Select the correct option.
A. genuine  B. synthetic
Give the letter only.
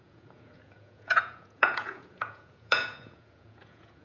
B